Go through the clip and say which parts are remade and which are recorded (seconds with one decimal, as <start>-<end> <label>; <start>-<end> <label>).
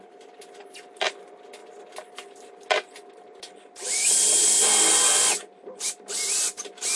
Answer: 0.0-7.0 recorded